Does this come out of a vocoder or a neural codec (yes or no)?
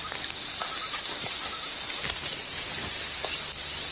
no